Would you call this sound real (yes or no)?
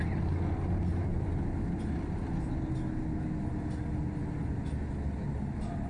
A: yes